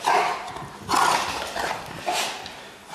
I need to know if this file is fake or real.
real